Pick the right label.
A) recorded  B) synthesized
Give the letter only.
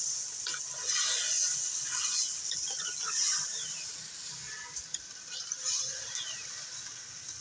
A